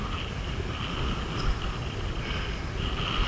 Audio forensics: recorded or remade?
recorded